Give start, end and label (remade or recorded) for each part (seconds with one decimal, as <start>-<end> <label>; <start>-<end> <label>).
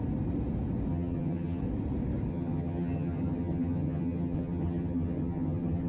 0.0-0.9 recorded; 0.9-1.6 remade; 1.6-2.3 recorded; 2.3-5.9 remade